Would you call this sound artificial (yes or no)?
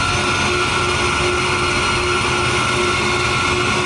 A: no